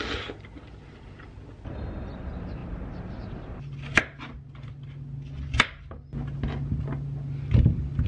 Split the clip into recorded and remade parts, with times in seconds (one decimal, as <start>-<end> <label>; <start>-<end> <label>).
0.0-8.1 recorded